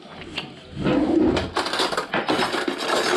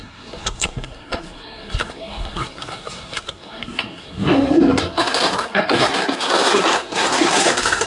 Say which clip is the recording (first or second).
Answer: first